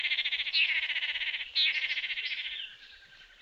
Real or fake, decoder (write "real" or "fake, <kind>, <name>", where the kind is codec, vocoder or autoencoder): real